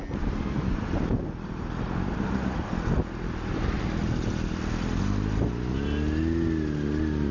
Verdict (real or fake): real